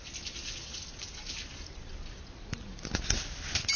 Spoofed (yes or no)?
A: no